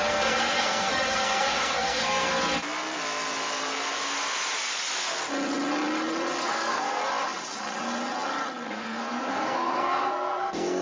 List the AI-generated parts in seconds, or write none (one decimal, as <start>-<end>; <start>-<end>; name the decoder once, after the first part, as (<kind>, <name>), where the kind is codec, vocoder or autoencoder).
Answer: 0.0-2.3 (codec, SNAC); 6.4-7.0; 8.7-10.8